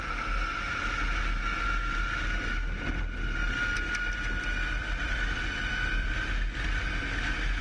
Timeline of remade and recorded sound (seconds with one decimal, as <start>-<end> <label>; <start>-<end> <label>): 0.0-4.8 recorded; 4.8-6.9 remade; 6.9-7.6 recorded